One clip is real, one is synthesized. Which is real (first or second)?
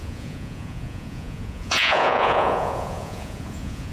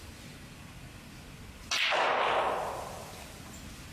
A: second